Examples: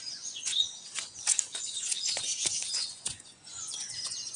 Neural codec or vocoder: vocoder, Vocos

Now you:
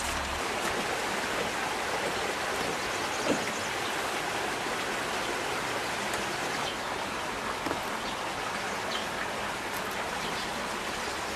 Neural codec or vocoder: none